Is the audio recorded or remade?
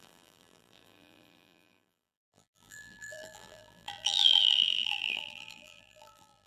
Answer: remade